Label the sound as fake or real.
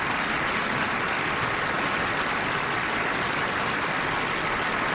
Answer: real